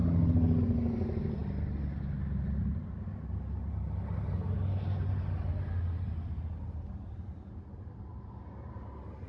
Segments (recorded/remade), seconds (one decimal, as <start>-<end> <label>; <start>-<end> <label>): 0.0-9.3 recorded